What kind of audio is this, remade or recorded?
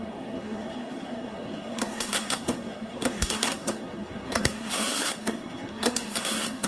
remade